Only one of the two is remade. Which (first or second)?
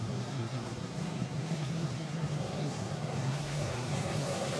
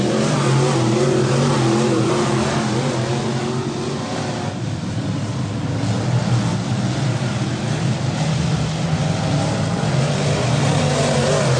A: first